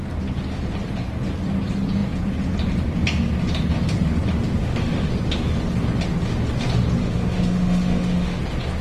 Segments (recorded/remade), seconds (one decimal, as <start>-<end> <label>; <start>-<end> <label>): 0.0-4.6 recorded; 4.6-5.1 remade; 5.1-7.0 recorded; 7.0-8.4 remade; 8.4-8.8 recorded